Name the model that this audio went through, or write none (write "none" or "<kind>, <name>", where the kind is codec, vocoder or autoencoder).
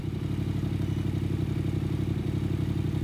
none